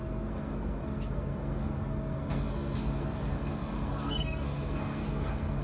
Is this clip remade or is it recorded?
remade